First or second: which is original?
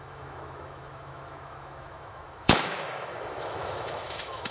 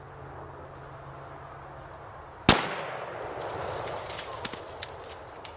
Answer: second